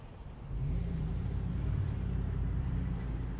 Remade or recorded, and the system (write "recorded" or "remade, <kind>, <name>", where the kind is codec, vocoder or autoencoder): remade, vocoder, BigVGAN v2